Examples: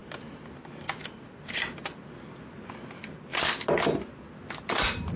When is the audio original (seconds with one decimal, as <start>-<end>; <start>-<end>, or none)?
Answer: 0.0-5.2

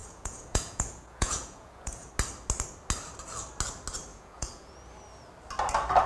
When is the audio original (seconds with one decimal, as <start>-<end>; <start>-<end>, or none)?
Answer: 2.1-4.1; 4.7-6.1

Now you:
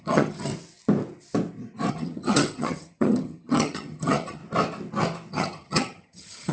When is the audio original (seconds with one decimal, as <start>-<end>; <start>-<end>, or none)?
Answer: 0.5-1.9; 4.4-5.3